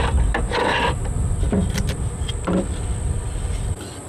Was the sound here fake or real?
real